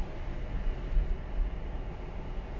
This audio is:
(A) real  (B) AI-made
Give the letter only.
A